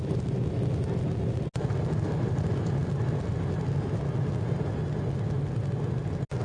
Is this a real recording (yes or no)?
yes